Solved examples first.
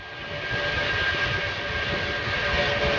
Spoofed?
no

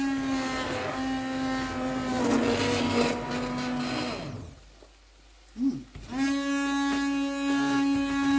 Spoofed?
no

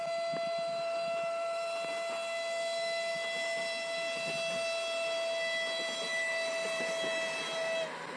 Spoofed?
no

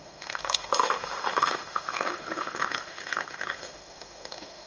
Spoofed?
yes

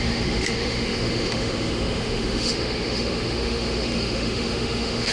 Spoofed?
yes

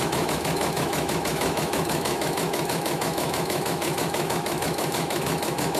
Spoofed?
yes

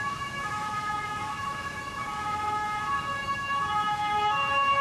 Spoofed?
yes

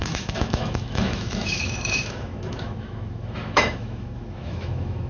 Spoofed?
yes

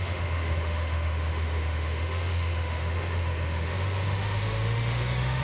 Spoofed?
yes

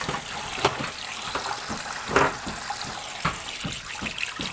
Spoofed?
no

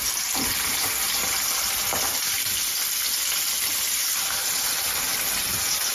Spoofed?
no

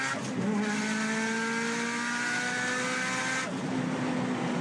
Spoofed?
no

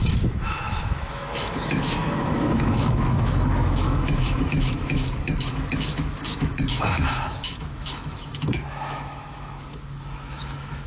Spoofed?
yes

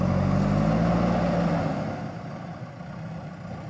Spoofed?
no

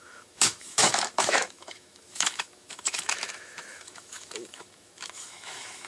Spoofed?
yes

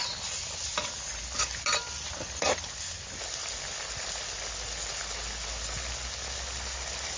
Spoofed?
no